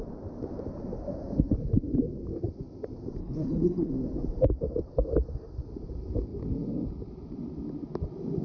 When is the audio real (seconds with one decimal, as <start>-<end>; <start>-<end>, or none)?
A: 0.0-3.2; 3.9-8.4